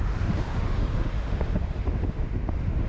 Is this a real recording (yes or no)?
no